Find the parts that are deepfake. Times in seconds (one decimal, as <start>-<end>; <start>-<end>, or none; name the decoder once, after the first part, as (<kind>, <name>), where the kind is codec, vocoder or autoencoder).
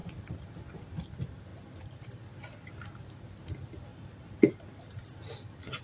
3.9-5.8 (vocoder, BigVGAN v2)